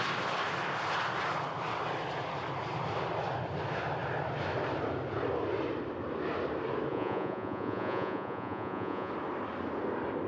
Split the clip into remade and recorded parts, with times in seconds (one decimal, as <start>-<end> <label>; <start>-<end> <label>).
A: 0.0-6.9 recorded; 6.9-9.1 remade; 9.1-10.3 recorded